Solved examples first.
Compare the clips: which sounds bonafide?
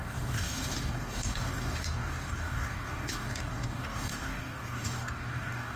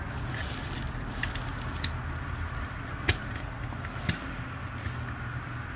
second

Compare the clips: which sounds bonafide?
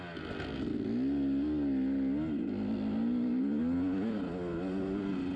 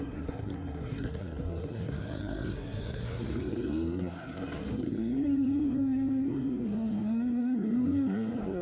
first